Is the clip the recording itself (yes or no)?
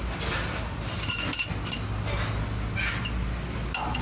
yes